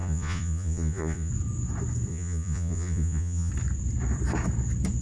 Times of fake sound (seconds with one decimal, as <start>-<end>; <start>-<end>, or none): 0.0-1.3; 2.1-3.5